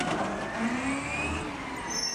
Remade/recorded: recorded